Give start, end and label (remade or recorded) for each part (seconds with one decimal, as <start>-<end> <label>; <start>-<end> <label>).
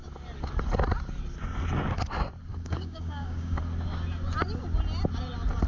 0.0-2.5 recorded; 2.5-3.6 remade; 3.6-5.7 recorded